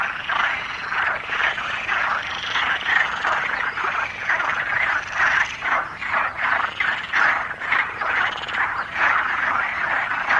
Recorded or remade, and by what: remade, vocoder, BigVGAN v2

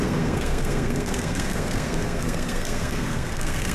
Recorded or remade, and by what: remade, codec, SNAC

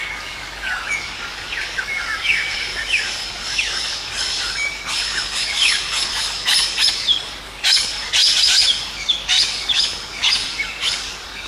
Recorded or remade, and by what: remade, codec, DAC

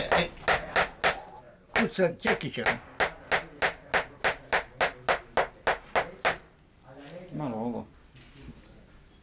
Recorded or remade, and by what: recorded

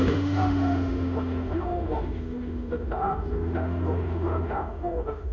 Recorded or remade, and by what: remade, autoencoder, DAC-VAE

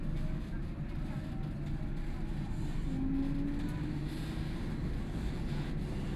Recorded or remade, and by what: recorded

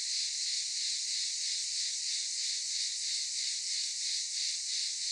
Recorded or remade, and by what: recorded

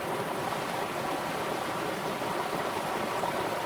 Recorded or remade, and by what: recorded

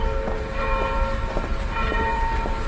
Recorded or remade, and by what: remade, vocoder, BigVGAN v2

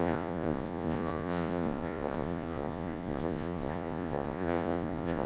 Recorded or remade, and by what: remade, vocoder, Vocos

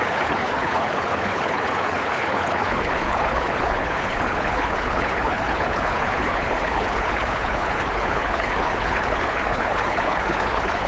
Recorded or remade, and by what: remade, codec, HILCodec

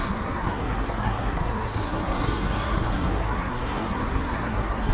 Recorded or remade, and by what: remade, codec, SNAC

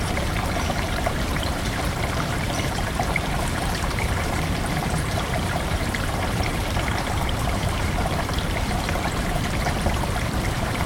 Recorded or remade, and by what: remade, vocoder, BigVGAN v2